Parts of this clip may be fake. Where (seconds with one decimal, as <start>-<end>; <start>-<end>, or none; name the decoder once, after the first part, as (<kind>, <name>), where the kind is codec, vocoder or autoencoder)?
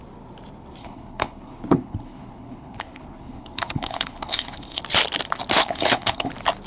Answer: 0.8-4.8 (codec, HILCodec); 5.6-6.3